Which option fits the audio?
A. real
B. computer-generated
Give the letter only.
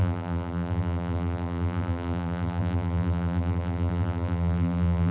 B